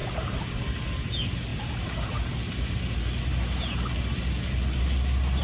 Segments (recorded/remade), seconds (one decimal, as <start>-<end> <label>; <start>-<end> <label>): 0.0-5.4 recorded